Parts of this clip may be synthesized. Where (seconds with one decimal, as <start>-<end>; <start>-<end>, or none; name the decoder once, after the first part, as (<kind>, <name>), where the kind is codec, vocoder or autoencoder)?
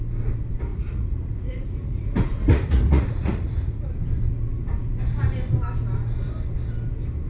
0.7-3.9 (vocoder, Vocos)